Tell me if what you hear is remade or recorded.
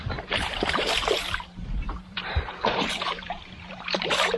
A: remade